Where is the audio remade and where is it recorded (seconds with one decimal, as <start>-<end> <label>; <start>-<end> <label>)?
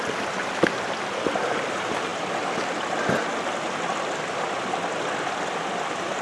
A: 0.0-6.2 recorded